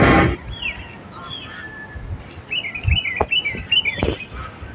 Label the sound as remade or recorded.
recorded